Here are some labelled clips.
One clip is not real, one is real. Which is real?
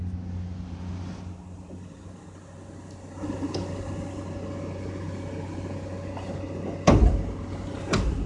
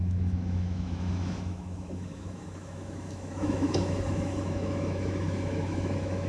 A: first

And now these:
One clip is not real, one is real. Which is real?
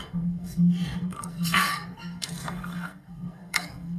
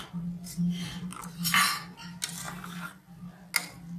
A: second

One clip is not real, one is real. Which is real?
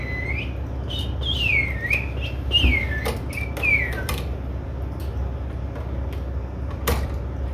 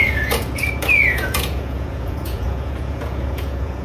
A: first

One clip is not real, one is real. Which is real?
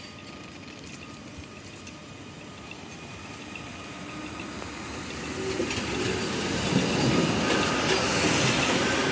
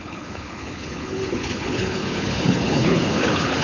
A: first